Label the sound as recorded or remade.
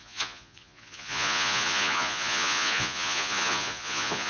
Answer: remade